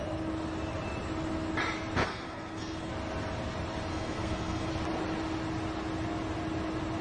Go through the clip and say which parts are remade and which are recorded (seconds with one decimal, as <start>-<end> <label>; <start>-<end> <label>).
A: 0.0-2.0 recorded; 2.0-2.9 remade; 2.9-3.9 recorded; 3.9-4.7 remade; 4.7-7.0 recorded